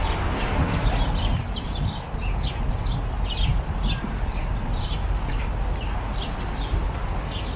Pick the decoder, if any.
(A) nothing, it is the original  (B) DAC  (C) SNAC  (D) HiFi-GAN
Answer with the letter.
A